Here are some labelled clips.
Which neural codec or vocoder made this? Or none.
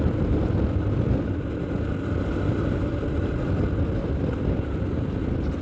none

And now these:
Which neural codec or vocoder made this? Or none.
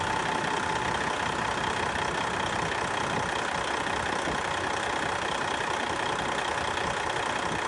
none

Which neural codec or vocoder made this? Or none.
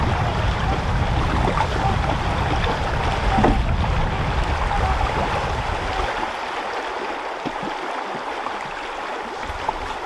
none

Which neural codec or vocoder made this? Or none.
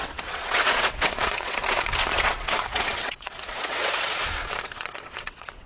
vocoder, WaveNeXt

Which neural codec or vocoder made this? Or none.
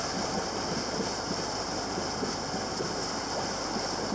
none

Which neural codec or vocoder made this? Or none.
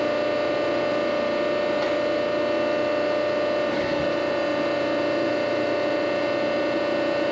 none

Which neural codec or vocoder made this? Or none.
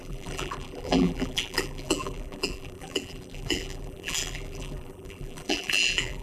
vocoder, BigVGAN v2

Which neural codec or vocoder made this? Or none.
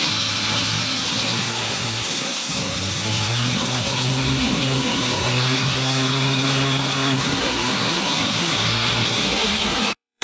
codec, SNAC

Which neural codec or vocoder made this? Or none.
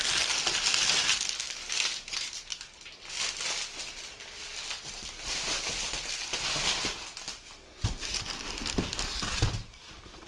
none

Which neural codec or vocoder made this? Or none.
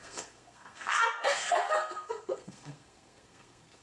codec, SNAC